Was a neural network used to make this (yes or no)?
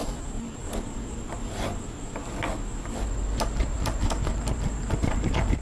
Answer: no